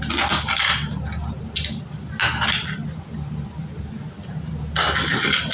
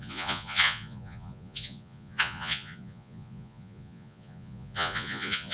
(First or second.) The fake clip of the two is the second